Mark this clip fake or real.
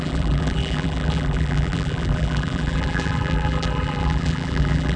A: fake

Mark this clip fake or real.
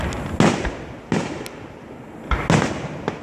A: real